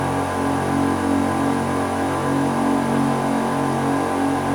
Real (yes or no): yes